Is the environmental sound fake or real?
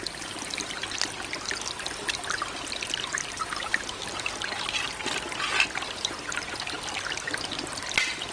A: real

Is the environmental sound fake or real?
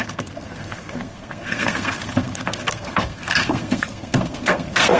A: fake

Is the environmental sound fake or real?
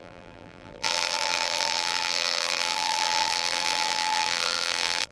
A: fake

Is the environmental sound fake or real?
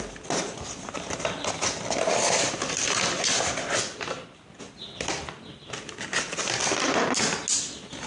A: real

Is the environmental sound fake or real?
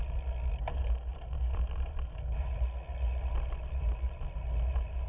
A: real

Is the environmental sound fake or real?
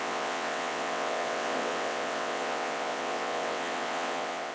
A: fake